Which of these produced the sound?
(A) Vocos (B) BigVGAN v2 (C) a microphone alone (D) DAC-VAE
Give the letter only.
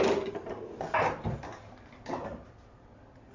C